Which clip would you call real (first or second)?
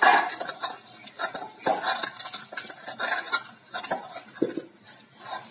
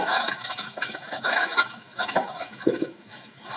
first